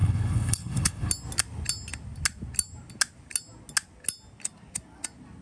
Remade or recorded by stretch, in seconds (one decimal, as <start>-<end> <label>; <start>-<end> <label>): 0.0-1.1 remade; 1.1-5.4 recorded